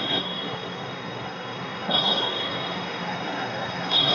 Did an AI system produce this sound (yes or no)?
yes